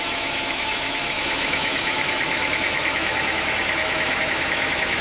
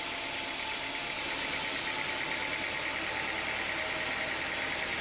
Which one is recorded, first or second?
second